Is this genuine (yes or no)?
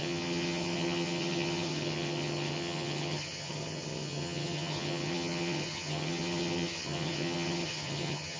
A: no